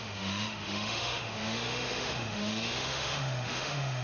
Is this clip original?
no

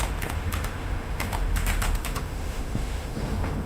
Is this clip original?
no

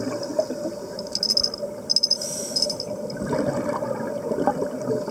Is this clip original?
yes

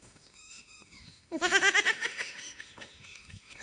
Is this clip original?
no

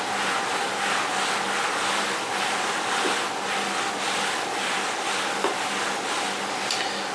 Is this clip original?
yes